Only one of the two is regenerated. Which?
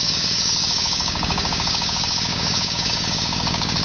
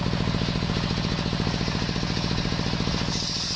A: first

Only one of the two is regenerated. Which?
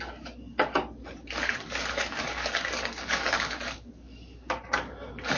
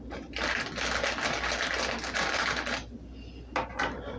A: first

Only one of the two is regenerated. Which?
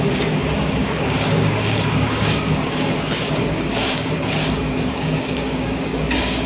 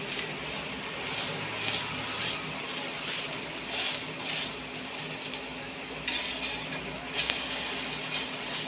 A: first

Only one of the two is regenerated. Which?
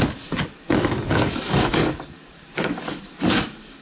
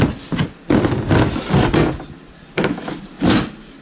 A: first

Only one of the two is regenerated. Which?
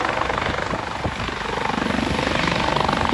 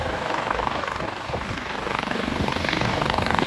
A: second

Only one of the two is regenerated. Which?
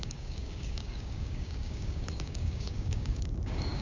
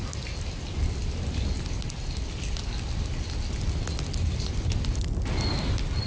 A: first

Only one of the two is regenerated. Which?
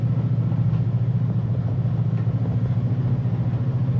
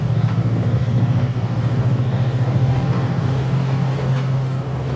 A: second